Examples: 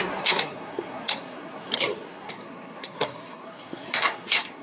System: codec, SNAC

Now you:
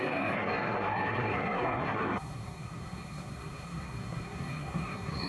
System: codec, SNAC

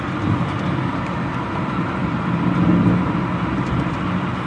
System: none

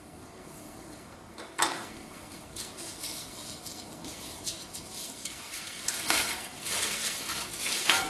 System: codec, SNAC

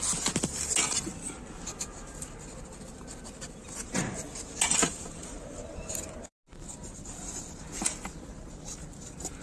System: none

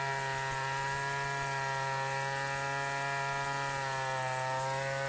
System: none